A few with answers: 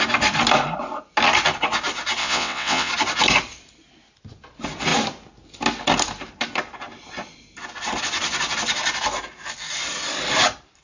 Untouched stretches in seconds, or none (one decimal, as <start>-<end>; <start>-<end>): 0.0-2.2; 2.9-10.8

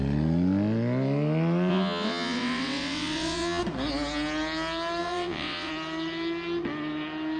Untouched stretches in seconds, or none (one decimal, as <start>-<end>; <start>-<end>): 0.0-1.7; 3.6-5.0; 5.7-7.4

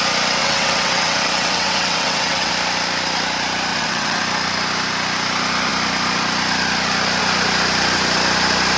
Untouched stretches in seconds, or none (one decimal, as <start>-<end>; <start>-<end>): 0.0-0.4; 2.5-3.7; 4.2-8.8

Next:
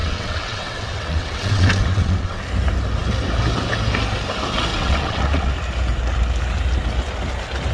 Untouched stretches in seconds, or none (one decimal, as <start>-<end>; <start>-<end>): 2.4-4.7; 5.5-7.7

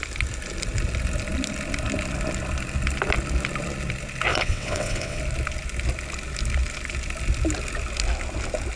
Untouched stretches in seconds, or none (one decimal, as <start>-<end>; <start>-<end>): 0.0-4.3; 5.2-8.8